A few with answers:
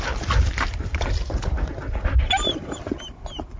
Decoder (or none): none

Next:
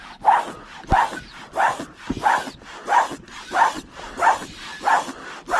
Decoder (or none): none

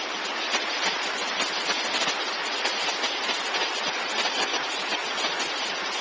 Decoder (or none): none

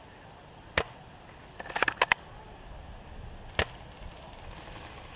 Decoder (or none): none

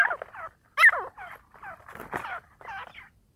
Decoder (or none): none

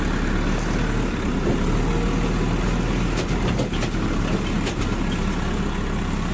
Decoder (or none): none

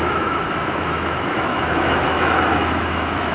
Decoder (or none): autoencoder, DAC-VAE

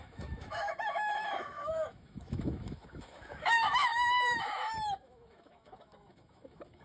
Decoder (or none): autoencoder, DAC-VAE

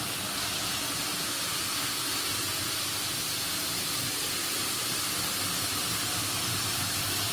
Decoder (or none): none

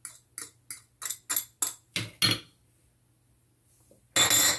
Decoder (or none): none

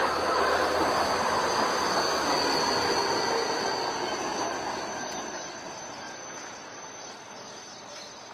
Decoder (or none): none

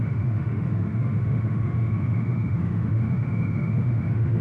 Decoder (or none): autoencoder, DAC-VAE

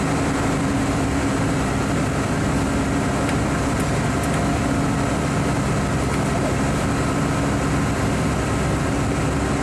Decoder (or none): none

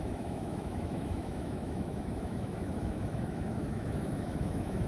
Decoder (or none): autoencoder, DAC-VAE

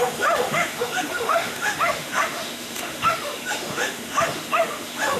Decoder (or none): autoencoder, DAC-VAE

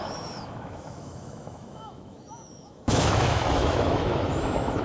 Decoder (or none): autoencoder, DAC-VAE